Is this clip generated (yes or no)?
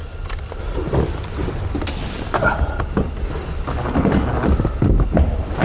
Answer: no